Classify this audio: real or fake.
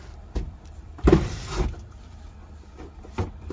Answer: fake